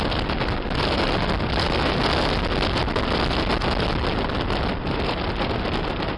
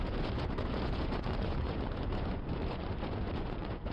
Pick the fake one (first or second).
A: second